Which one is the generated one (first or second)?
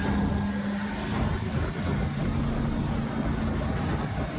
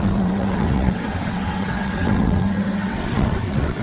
second